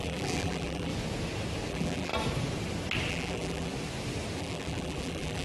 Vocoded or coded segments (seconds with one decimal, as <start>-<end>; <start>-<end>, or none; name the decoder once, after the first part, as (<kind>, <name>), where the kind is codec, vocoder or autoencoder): 0.0-0.9 (vocoder, BigVGAN v2); 1.7-2.1; 3.1-3.7; 4.4-5.4